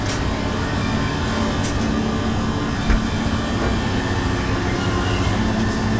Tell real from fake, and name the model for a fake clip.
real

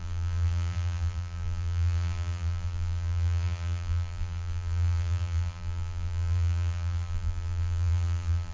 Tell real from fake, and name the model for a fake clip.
fake, vocoder, BigVGAN v2